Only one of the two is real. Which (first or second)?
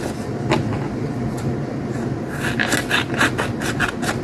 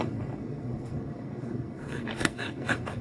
first